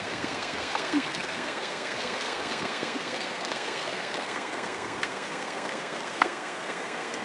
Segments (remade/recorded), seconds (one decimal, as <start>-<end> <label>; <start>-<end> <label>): 0.0-7.2 remade